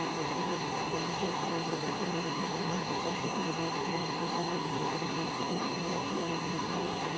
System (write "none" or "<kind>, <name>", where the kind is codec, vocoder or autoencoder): codec, SNAC